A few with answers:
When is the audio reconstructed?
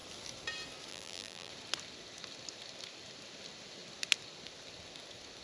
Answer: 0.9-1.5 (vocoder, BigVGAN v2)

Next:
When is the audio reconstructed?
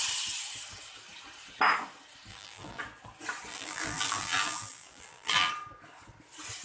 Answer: 2.3-2.8 (vocoder, BigVGAN v2); 3.5-5.5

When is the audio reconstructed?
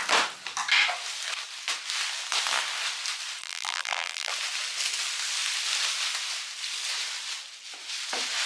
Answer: 3.4-4.3 (vocoder, BigVGAN v2)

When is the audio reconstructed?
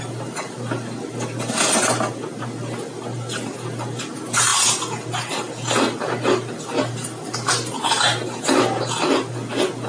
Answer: none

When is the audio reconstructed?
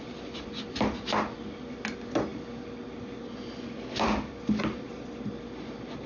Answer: none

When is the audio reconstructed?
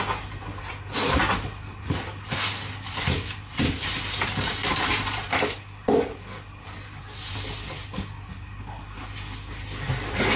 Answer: 4.6-5.3 (vocoder, BigVGAN v2)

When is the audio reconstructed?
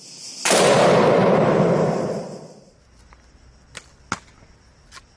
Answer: 1.2-3.0 (vocoder, BigVGAN v2)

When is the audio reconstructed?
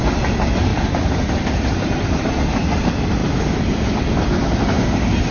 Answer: 0.7-2.3 (vocoder, BigVGAN v2)